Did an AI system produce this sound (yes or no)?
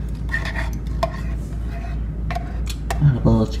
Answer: no